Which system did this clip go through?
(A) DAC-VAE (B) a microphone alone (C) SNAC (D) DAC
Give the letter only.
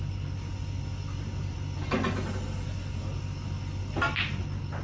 B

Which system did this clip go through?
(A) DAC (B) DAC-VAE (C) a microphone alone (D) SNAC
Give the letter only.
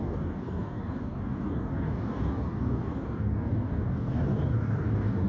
A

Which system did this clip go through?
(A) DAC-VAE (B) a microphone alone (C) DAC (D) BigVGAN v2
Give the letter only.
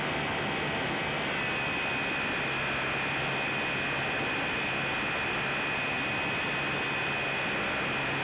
B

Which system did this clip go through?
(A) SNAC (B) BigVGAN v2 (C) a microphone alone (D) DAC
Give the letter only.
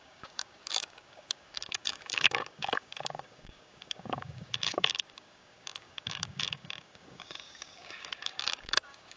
D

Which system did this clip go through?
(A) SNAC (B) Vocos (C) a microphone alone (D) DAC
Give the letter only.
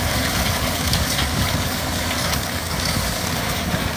D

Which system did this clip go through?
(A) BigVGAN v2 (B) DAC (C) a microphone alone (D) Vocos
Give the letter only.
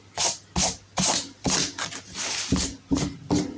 C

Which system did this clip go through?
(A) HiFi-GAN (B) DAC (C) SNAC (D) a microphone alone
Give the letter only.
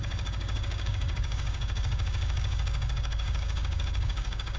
B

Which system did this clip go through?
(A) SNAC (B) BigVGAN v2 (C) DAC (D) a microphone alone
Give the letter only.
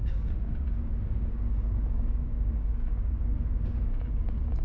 C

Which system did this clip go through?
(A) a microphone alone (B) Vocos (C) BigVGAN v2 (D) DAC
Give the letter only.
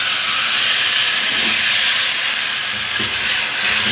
A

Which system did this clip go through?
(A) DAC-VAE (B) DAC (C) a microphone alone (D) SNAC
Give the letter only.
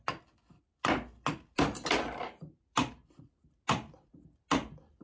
C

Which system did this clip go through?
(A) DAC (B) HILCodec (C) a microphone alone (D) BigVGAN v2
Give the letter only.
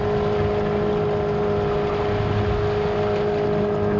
C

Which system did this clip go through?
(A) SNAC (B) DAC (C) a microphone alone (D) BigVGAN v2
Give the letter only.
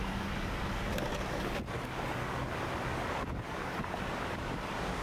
B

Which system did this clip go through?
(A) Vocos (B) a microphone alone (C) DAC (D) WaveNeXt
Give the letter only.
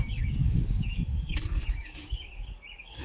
C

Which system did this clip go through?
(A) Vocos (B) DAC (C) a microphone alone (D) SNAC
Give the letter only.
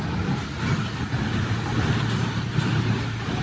C